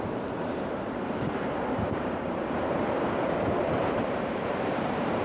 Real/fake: fake